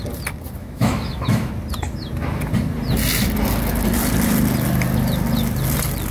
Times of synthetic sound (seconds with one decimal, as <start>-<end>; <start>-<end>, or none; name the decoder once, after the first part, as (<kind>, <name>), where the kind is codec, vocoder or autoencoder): 0.6-1.5 (autoencoder, DAC-VAE)

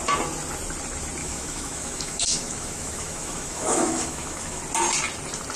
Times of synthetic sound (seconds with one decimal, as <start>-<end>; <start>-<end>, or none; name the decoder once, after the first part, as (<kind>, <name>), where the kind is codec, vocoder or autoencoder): 1.2-4.6 (autoencoder, DAC-VAE)

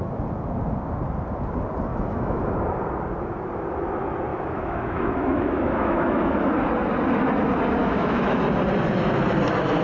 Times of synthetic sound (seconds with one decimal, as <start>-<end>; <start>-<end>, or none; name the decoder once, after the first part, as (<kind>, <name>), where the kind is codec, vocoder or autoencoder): 1.9-2.5 (autoencoder, DAC-VAE); 4.3-6.6; 7.8-8.4

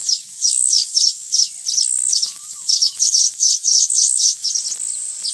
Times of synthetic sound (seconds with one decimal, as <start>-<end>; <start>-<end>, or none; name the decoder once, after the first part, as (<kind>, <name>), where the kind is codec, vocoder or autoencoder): 0.0-1.5 (autoencoder, DAC-VAE); 2.1-4.5

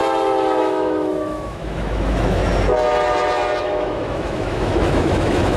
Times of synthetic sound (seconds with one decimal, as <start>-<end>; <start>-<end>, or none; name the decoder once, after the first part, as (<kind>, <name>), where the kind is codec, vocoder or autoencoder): 0.6-2.4 (autoencoder, DAC-VAE); 3.6-5.6

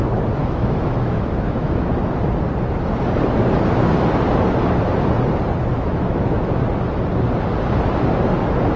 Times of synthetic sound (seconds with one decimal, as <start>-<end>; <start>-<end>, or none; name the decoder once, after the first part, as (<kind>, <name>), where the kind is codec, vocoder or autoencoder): 0.4-2.1 (autoencoder, DAC-VAE); 5.7-6.5

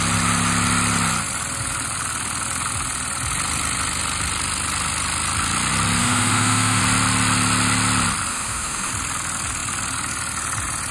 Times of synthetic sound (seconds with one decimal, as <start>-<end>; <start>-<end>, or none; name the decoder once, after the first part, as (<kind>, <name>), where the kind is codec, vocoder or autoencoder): 6.0-6.8 (autoencoder, DAC-VAE); 8.3-8.9